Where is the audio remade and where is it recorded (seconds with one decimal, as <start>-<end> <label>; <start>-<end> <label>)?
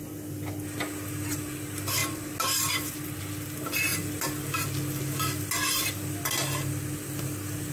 0.0-7.7 recorded